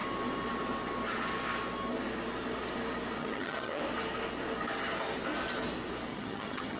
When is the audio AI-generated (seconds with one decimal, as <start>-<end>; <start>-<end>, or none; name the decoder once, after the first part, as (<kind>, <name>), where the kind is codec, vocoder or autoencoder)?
3.2-3.8 (vocoder, HiFi-GAN); 6.1-6.8